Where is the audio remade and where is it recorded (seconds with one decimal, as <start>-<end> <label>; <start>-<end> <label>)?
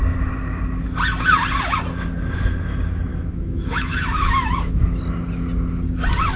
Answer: 0.0-3.1 recorded; 3.1-5.0 remade; 5.0-6.4 recorded